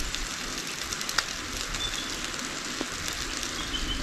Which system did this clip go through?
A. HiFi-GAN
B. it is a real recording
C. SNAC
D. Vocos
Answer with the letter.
B